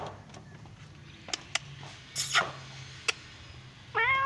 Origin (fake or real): real